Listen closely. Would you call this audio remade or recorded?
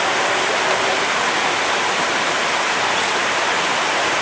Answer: recorded